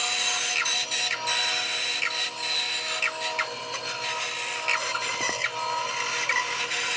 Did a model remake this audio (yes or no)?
no